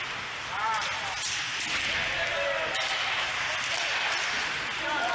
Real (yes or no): yes